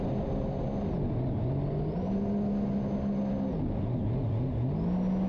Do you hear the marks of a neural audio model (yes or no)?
no